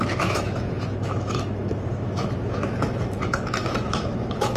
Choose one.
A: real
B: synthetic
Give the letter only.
B